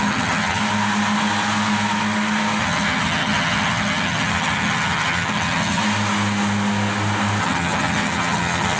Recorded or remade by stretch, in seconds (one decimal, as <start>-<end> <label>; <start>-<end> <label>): 0.0-0.6 remade; 0.6-2.6 recorded; 2.6-5.8 remade; 5.8-7.4 recorded; 7.4-8.8 remade